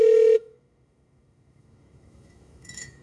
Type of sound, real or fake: fake